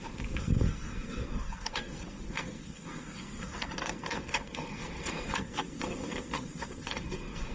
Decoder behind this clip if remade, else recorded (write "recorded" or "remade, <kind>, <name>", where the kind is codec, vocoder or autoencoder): remade, codec, SNAC